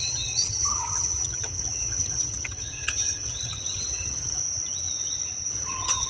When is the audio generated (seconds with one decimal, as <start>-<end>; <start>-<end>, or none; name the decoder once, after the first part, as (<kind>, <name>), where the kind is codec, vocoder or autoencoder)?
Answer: 0.0-4.4 (vocoder, HiFi-GAN); 5.5-6.1